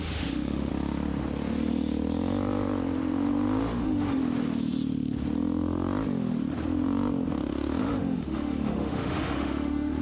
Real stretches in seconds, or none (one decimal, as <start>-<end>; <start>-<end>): 0.7-3.8; 4.2-7.8